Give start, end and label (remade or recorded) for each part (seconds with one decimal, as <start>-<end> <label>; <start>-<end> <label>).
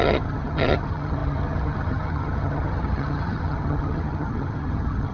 0.0-5.1 remade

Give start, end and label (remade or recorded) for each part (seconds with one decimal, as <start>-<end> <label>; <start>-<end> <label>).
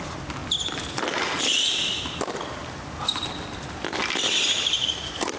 0.0-5.4 recorded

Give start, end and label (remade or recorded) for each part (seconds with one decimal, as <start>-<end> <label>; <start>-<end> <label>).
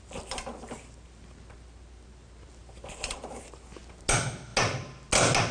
0.0-5.5 recorded